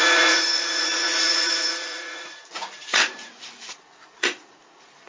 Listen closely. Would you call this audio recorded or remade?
remade